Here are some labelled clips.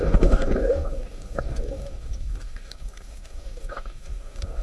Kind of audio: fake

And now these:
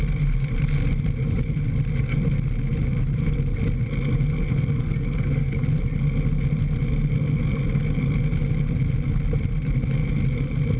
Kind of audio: real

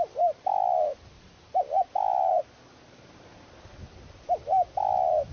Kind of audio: real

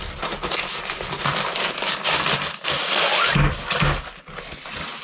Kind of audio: real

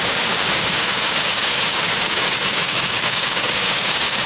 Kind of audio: fake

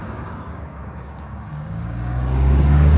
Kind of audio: fake